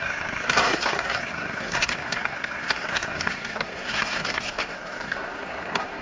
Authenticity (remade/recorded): remade